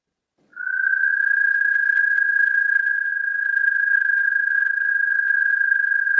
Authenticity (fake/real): fake